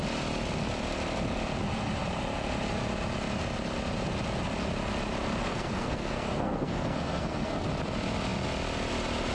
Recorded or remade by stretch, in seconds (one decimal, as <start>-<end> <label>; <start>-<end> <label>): 0.0-5.5 recorded; 5.5-7.7 remade; 7.7-9.3 recorded